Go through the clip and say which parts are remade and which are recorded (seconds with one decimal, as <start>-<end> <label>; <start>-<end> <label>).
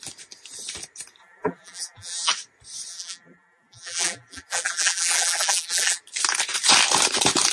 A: 0.0-1.2 recorded; 1.2-2.3 remade; 2.3-2.9 recorded; 2.9-6.0 remade; 6.0-7.5 recorded